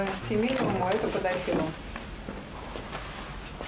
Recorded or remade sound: recorded